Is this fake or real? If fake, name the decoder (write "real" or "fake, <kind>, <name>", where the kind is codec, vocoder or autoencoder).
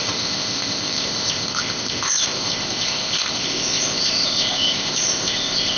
fake, codec, ZipCodec